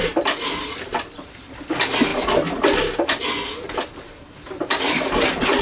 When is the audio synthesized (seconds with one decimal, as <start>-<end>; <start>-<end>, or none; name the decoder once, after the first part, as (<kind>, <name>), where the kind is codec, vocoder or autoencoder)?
none